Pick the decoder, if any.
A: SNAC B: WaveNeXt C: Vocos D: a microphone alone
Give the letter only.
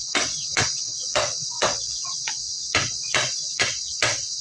B